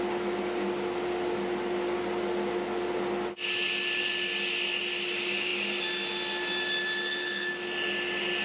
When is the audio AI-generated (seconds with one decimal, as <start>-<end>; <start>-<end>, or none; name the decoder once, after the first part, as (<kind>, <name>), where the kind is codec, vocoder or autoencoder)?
none